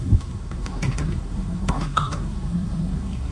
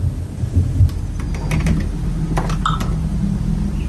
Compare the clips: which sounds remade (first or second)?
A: first